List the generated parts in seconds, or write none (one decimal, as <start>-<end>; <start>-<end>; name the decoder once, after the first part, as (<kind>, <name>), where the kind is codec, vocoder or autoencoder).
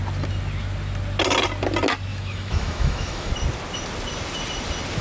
2.1-3.3 (autoencoder, DAC-VAE)